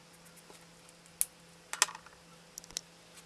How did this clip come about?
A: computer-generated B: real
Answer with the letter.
B